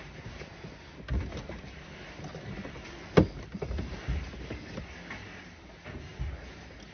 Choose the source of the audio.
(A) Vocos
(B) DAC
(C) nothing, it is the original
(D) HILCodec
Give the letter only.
C